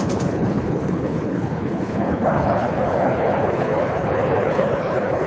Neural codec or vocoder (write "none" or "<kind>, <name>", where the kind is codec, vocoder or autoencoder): codec, HILCodec